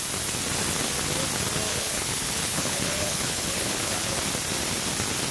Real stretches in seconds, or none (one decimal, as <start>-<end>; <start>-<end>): 0.0-1.7; 4.1-5.3